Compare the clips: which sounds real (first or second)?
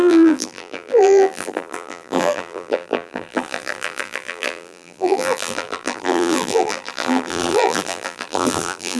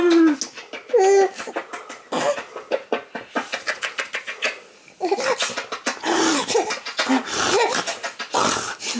second